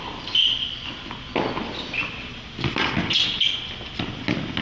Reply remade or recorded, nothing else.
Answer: recorded